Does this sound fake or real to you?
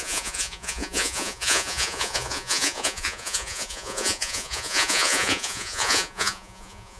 fake